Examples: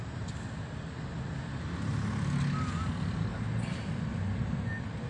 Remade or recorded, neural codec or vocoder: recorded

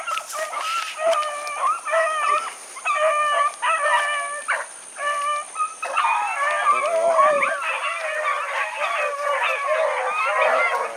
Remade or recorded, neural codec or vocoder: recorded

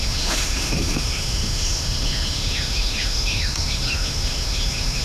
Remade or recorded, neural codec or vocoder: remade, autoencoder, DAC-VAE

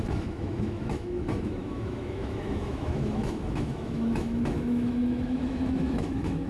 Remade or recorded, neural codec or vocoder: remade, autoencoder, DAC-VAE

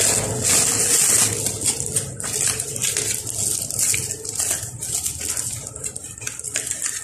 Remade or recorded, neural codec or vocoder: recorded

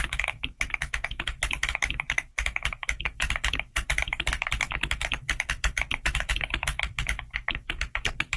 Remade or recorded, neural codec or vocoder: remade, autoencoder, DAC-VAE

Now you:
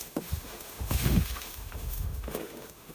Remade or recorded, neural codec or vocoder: remade, autoencoder, DAC-VAE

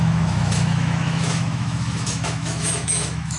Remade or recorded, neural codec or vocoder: remade, autoencoder, DAC-VAE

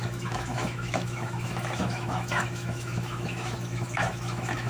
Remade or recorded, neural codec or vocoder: remade, autoencoder, DAC-VAE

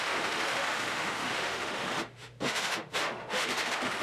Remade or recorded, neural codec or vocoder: remade, autoencoder, DAC-VAE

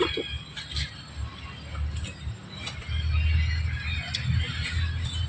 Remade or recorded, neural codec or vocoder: recorded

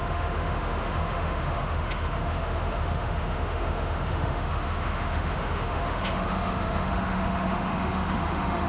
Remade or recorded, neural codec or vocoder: remade, autoencoder, DAC-VAE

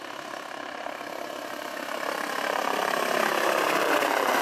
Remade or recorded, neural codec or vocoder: recorded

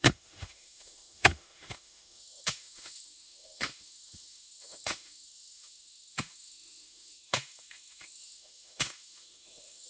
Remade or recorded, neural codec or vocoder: remade, autoencoder, DAC-VAE